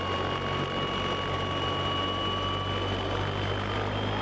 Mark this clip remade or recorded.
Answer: recorded